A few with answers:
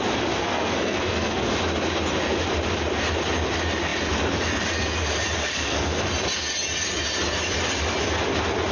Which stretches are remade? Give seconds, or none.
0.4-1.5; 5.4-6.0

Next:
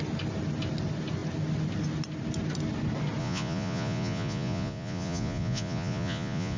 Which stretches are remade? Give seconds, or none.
3.2-6.6

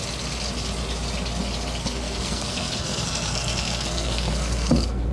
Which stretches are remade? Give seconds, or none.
1.8-5.1

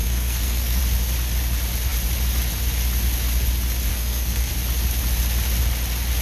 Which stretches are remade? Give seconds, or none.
0.0-0.8; 3.9-4.5

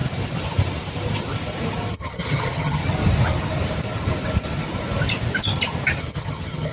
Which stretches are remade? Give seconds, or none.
1.9-2.8; 6.0-6.7

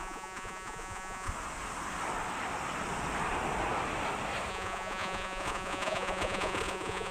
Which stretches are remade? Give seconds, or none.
0.0-1.3; 4.5-7.1

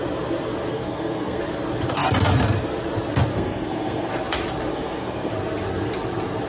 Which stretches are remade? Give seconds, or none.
0.7-1.4; 3.3-4.1; 4.7-5.3

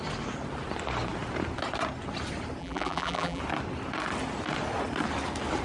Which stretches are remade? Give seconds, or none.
2.6-3.4